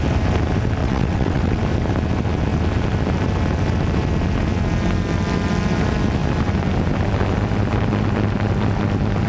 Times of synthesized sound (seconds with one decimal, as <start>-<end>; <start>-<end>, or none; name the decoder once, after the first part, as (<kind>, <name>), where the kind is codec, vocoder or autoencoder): 0.8-1.6 (vocoder, WaveNeXt)